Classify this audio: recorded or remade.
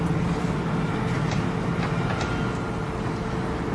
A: recorded